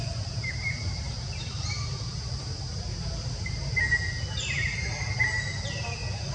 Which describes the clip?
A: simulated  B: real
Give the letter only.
B